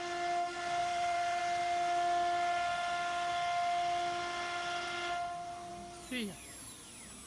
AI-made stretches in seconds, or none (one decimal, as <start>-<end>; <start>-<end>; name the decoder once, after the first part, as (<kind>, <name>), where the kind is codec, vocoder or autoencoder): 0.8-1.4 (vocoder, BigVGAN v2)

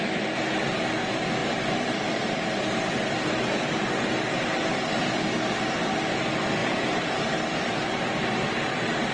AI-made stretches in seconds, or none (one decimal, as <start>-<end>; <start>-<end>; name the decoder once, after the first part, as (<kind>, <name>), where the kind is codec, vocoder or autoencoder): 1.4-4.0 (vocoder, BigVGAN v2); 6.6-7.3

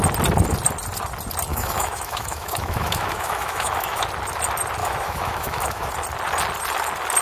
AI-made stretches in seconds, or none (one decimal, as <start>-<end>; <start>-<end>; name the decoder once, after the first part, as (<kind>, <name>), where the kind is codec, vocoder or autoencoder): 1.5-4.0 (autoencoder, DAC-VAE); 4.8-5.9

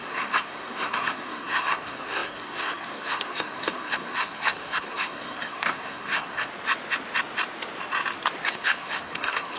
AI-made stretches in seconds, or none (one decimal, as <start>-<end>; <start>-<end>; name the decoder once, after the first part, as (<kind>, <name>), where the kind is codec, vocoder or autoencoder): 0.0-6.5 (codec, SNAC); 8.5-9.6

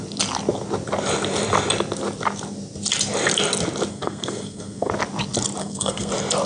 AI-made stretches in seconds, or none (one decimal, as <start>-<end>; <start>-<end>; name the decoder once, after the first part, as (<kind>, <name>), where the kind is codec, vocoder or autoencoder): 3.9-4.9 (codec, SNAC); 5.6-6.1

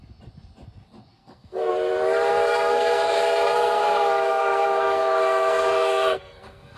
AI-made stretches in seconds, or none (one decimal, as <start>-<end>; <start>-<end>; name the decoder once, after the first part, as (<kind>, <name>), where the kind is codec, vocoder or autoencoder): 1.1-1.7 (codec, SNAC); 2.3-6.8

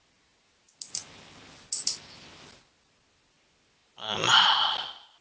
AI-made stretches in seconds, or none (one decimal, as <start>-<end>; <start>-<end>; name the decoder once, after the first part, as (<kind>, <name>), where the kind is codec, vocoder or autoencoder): none